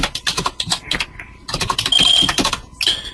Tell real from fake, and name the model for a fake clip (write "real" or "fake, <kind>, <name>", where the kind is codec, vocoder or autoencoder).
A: real